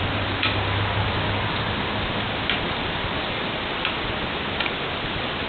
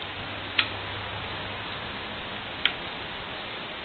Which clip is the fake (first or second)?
second